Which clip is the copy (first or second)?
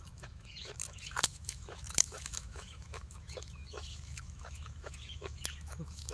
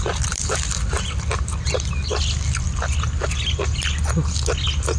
first